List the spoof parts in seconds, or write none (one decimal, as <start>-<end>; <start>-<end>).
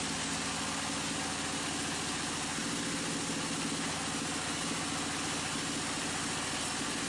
none